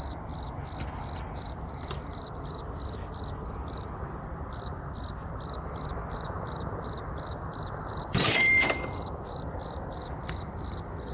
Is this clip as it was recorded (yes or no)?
no